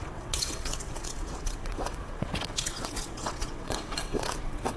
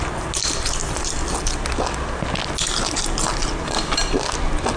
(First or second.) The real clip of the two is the second